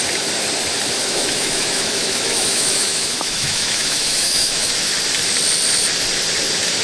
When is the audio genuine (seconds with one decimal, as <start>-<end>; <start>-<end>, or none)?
0.0-1.0; 4.9-6.8